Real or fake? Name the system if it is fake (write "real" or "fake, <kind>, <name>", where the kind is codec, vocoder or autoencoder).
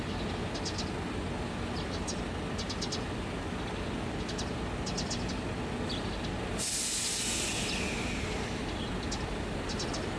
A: real